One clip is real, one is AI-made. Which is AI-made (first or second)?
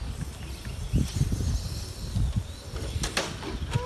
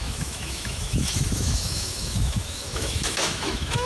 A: second